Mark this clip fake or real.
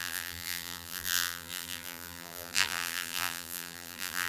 fake